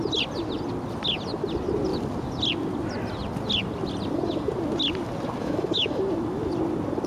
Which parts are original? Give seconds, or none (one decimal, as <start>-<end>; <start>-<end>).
0.0-5.4; 6.0-7.1